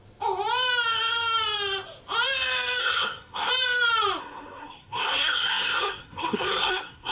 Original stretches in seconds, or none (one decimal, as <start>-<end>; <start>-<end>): 0.0-2.8; 3.5-4.2